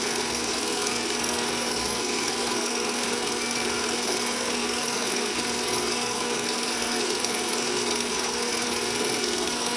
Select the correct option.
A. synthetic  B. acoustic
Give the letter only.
A